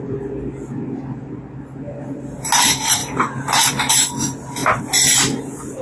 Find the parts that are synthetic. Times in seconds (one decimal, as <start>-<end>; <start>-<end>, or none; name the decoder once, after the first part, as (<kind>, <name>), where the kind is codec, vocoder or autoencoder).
none